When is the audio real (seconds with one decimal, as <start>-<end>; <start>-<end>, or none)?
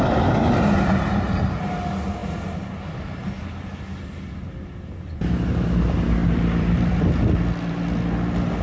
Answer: 0.0-6.2; 7.7-8.6